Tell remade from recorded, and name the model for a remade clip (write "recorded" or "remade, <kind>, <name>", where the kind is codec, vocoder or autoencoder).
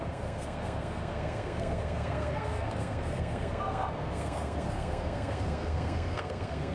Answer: remade, codec, SNAC